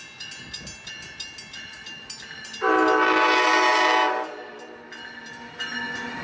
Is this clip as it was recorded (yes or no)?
yes